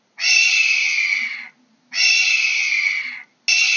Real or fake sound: real